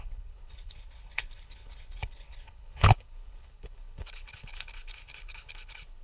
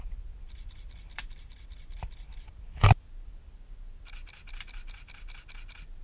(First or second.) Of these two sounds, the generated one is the first